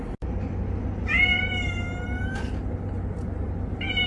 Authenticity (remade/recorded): recorded